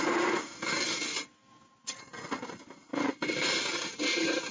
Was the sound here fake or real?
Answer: real